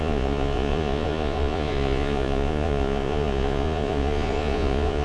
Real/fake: fake